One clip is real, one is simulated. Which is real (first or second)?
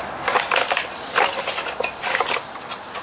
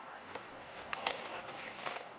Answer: first